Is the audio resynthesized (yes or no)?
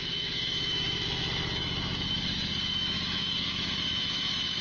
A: yes